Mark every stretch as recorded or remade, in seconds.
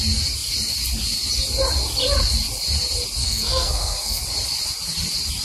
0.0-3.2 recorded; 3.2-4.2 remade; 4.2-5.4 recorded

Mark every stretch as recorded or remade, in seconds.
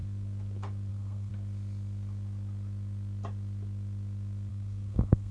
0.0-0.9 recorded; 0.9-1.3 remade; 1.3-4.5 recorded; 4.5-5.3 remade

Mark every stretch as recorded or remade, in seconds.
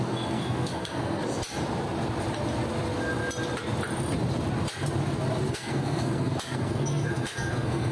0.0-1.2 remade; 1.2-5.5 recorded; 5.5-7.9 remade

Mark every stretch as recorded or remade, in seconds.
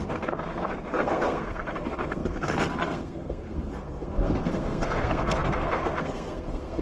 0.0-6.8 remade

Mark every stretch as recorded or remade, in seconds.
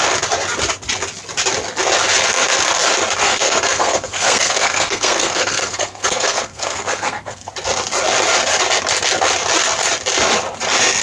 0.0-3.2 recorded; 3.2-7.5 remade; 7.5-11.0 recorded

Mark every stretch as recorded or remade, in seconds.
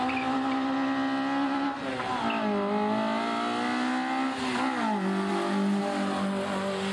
0.0-6.9 recorded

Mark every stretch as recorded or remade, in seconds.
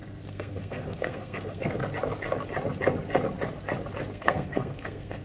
0.0-1.8 remade; 1.8-4.1 recorded; 4.1-5.2 remade